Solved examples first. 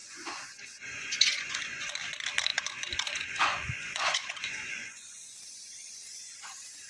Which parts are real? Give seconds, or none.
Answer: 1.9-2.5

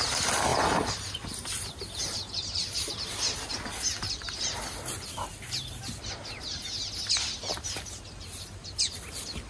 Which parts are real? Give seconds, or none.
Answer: 0.0-9.5

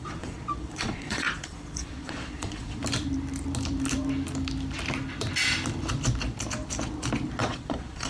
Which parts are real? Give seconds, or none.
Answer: 2.8-7.4

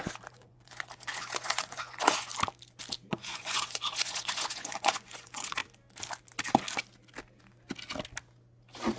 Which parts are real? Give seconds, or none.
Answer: 2.3-3.1; 5.6-9.0